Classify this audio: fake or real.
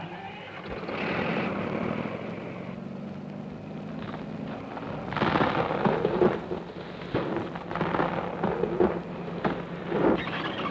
real